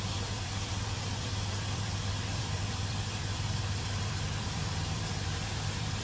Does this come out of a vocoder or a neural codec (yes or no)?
yes